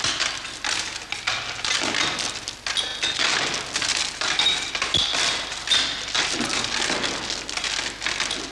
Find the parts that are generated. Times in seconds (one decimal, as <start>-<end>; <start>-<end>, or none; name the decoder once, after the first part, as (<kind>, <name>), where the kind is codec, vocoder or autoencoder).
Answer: none